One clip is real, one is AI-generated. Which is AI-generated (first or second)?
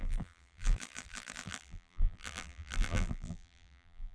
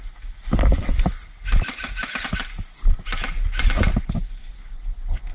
first